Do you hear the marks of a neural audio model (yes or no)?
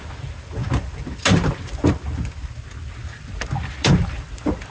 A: no